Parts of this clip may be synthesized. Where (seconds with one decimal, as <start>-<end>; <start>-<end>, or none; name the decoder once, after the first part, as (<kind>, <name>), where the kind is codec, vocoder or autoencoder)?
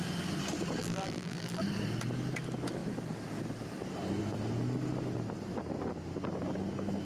0.8-1.6 (vocoder, BigVGAN v2)